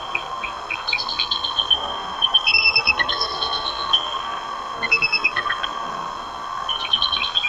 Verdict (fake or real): fake